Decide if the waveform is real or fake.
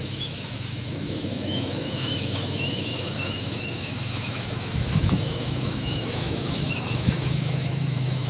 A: fake